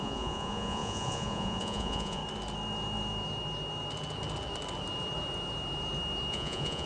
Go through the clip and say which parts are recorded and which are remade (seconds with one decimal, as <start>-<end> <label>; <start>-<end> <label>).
0.0-2.2 remade; 2.2-6.3 recorded; 6.3-6.9 remade